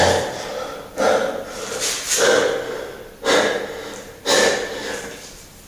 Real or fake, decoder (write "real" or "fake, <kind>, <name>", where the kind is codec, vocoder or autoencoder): real